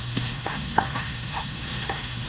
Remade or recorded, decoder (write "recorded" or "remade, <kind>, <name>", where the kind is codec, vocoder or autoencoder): remade, codec, SNAC